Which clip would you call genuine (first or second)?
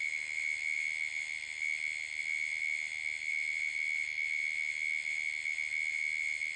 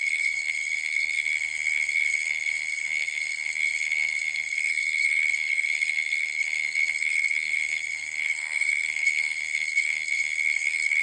first